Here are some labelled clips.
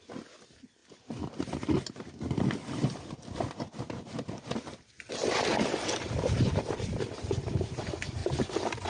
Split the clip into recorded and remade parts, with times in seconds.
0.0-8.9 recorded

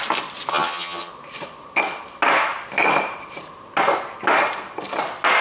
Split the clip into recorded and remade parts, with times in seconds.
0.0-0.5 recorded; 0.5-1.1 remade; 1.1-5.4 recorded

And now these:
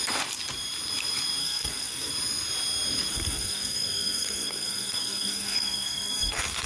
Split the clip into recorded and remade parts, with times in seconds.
0.0-1.4 recorded; 1.4-2.1 remade; 2.1-3.1 recorded; 3.1-6.7 remade

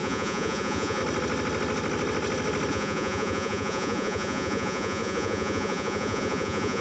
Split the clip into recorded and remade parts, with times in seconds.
0.0-1.0 remade; 1.0-2.7 recorded; 2.7-6.8 remade

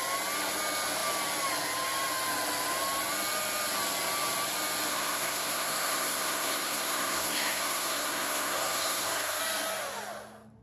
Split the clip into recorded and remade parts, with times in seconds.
0.0-4.9 recorded; 4.9-9.4 remade; 9.4-10.6 recorded

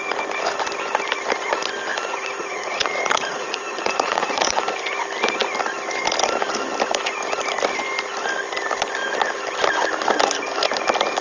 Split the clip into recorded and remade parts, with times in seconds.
0.0-1.9 recorded; 1.9-4.6 remade; 4.6-11.2 recorded

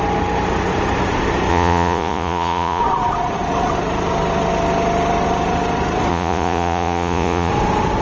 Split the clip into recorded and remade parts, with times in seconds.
0.0-1.5 recorded; 1.5-2.8 remade; 2.8-6.1 recorded; 6.1-7.5 remade; 7.5-8.0 recorded